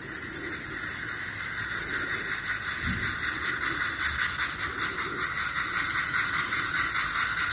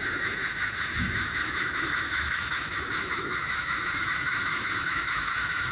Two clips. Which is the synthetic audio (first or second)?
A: second